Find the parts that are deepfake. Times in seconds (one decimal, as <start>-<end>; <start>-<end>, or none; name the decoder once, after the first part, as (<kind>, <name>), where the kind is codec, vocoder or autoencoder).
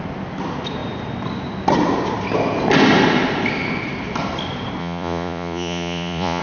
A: 4.8-6.4 (vocoder, Vocos)